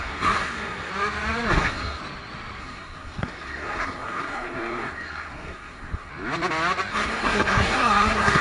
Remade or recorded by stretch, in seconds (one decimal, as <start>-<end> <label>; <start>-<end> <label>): 0.0-0.9 remade; 0.9-1.5 recorded; 1.5-2.0 remade; 2.0-2.6 recorded; 2.6-6.1 remade; 6.1-6.9 recorded; 6.9-8.4 remade